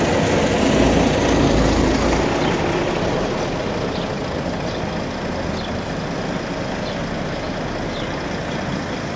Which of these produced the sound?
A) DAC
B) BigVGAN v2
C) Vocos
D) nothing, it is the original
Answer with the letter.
D